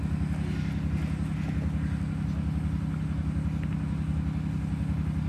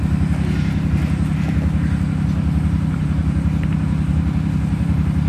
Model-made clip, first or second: second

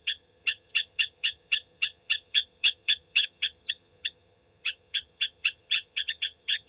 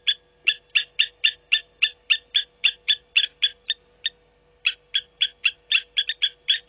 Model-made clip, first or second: first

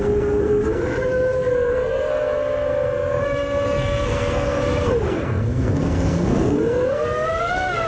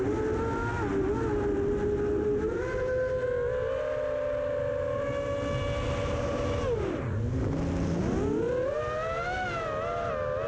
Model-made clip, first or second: first